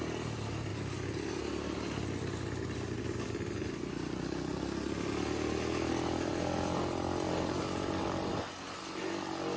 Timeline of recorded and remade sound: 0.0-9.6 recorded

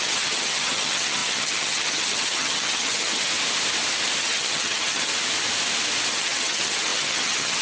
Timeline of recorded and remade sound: 0.0-3.3 remade; 3.3-4.2 recorded; 4.2-5.1 remade; 5.1-6.1 recorded; 6.1-7.6 remade

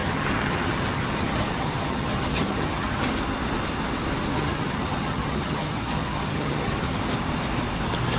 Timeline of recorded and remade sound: 0.0-3.1 remade; 3.1-4.3 recorded; 4.3-7.0 remade; 7.0-8.2 recorded

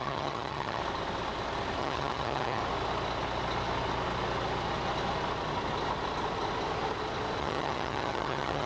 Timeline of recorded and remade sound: 0.0-0.8 remade; 0.8-1.8 recorded; 1.8-2.6 remade; 2.6-7.4 recorded; 7.4-8.7 remade

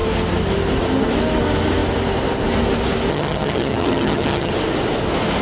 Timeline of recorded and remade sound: 0.0-3.1 recorded; 3.1-4.5 remade; 4.5-5.4 recorded

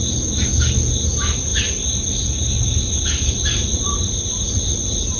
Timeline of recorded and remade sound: 0.0-5.2 recorded